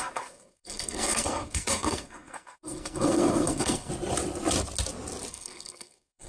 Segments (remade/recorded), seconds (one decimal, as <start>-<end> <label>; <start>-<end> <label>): 0.0-3.9 remade; 3.9-5.3 recorded; 5.3-6.3 remade